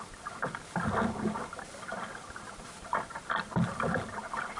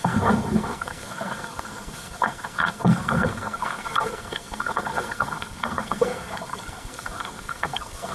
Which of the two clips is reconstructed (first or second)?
second